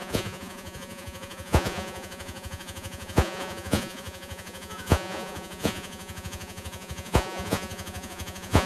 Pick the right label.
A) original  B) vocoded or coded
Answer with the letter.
B